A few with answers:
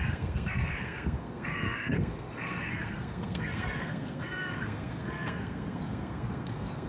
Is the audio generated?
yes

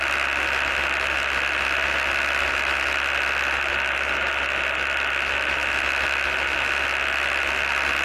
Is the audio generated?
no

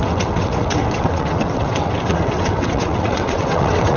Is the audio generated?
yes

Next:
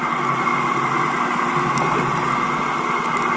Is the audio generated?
no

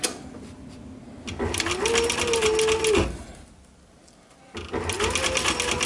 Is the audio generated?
no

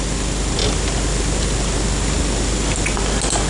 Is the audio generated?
no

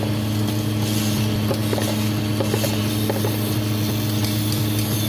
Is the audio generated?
no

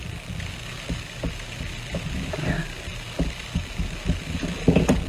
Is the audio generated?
no